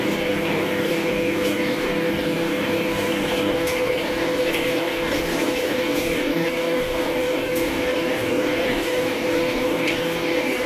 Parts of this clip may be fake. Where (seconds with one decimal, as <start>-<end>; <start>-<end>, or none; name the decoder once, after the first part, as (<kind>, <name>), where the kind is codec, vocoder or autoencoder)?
0.0-10.7 (codec, DAC)